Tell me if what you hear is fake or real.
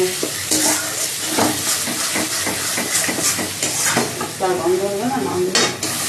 real